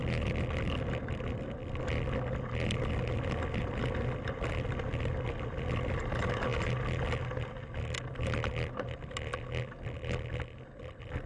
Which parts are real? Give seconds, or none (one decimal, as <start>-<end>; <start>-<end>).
0.0-11.3